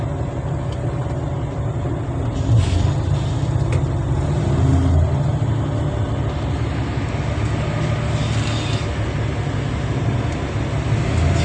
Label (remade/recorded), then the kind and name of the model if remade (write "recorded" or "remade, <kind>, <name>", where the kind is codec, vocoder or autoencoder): recorded